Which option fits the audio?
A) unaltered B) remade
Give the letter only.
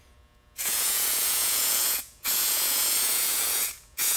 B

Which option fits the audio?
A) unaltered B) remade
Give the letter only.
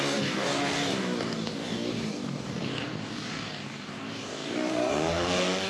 B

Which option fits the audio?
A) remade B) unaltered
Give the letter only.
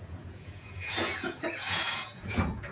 A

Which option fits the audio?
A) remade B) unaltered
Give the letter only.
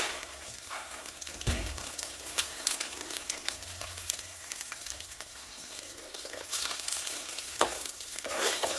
A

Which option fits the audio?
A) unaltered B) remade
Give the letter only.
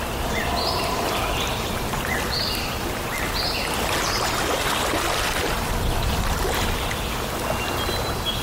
A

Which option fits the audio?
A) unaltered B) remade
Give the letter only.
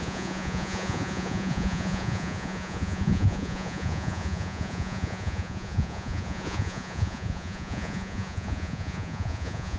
B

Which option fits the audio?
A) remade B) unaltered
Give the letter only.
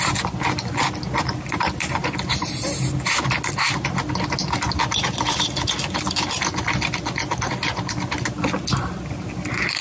B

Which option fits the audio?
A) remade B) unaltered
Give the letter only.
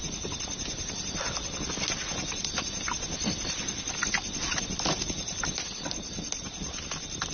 B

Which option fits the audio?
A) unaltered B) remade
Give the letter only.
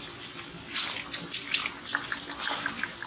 A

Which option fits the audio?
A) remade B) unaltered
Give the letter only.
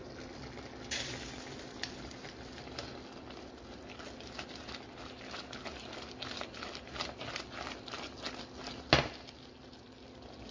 B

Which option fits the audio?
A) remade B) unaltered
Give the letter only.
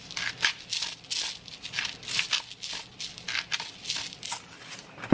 B